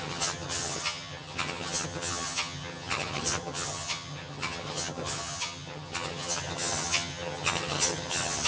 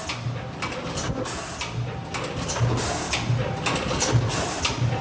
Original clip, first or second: second